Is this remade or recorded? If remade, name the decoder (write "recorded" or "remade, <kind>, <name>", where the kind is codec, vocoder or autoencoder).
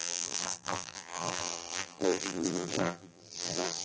remade, vocoder, BigVGAN v2